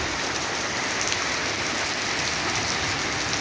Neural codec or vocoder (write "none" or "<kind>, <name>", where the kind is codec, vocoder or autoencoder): none